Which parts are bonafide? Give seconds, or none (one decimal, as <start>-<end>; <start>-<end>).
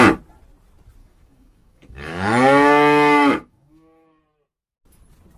0.0-1.0; 4.2-5.4